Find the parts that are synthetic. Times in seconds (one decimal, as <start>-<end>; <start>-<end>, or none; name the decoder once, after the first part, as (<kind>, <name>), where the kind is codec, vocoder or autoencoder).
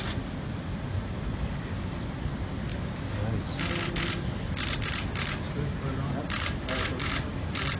none